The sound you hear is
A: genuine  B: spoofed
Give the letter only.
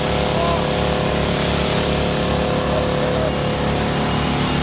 A